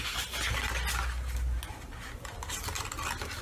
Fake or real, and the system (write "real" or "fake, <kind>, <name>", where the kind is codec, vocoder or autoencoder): real